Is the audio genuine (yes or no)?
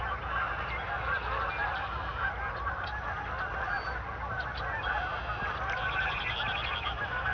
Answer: yes